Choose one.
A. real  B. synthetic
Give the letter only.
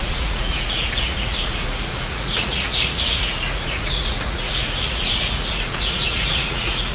B